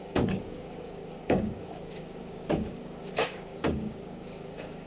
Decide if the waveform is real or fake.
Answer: fake